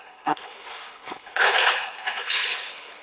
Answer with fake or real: fake